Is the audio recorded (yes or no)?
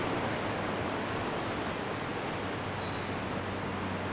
yes